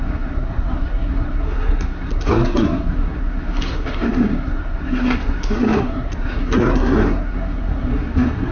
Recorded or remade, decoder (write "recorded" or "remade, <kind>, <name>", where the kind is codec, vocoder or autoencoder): remade, codec, SNAC